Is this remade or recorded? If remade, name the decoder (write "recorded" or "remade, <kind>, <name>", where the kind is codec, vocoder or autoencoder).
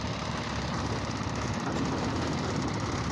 recorded